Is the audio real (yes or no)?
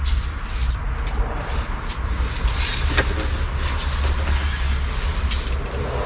yes